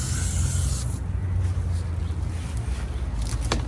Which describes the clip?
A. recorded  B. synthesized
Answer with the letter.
A